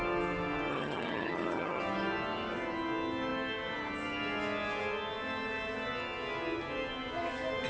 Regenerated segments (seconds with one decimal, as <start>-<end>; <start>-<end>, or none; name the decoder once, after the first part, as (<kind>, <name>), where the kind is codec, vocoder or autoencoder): 0.7-1.8 (vocoder, HiFi-GAN)